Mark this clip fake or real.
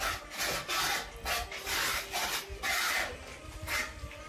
real